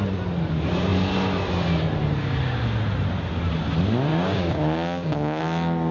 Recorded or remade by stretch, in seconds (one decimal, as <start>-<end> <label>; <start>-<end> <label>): 0.0-4.1 recorded; 4.1-5.4 remade; 5.4-5.9 recorded